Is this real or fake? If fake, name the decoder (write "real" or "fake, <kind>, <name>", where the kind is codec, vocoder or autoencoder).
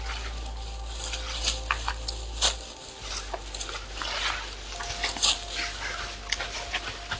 real